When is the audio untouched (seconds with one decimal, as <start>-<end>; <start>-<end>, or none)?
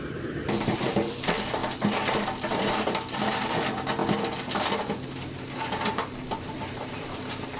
1.6-2.6; 4.0-5.7